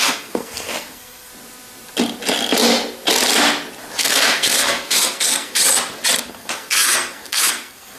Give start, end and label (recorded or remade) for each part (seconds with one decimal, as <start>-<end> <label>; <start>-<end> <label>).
0.0-1.3 remade; 1.3-4.0 recorded; 4.0-5.6 remade; 5.6-6.3 recorded; 6.3-8.0 remade